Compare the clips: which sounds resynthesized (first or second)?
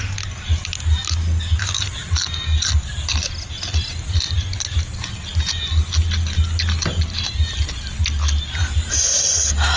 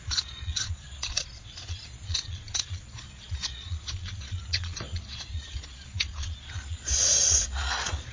second